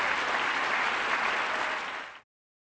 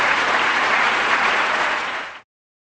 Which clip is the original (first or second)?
first